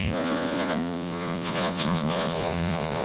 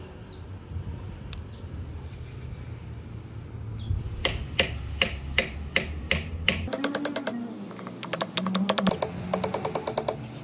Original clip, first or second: second